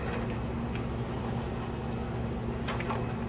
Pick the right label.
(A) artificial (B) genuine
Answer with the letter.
B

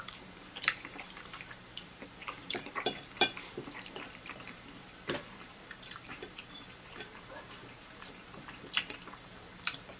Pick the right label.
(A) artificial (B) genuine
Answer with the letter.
A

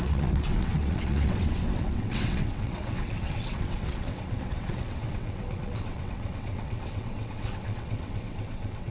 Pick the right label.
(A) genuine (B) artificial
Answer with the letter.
B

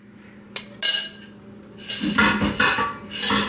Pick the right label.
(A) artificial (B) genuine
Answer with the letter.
B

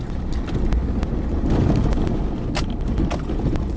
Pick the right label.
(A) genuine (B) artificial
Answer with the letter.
A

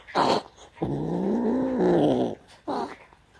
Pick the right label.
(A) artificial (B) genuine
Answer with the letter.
B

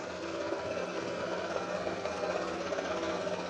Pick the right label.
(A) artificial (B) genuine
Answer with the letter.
A